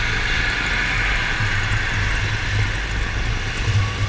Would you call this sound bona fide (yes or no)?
yes